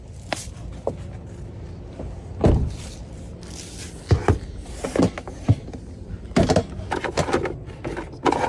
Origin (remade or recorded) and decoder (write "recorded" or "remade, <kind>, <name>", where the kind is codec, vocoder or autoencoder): recorded